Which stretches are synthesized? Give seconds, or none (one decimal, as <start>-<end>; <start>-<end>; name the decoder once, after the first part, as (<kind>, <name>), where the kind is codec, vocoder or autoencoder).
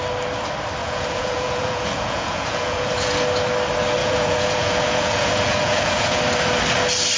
0.8-3.1 (vocoder, Vocos); 4.0-6.2